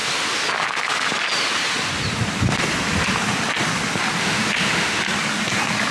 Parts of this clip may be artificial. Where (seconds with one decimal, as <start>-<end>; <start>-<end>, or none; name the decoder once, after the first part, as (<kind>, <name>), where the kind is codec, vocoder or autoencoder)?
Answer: 4.2-5.0 (autoencoder, DAC-VAE)